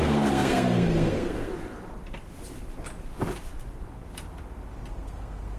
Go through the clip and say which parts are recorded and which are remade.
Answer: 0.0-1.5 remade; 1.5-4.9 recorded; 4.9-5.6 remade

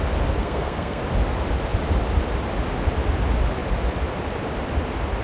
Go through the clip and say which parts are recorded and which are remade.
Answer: 0.0-0.4 recorded; 0.4-1.0 remade; 1.0-5.2 recorded

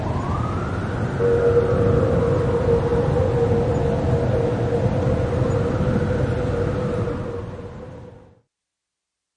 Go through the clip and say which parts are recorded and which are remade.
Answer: 0.0-9.4 recorded

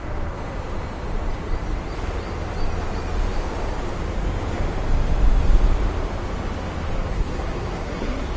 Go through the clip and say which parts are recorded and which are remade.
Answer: 0.0-7.1 recorded; 7.1-8.4 remade

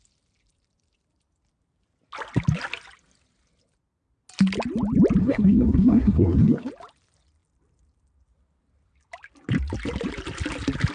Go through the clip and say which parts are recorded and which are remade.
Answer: 0.0-5.2 recorded; 5.2-6.7 remade; 6.7-10.9 recorded